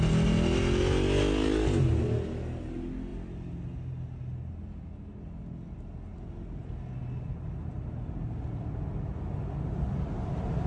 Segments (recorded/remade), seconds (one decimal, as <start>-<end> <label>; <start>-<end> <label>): 0.0-10.7 recorded